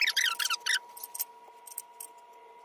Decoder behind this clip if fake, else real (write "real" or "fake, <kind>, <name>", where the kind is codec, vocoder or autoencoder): fake, vocoder, BigVGAN v2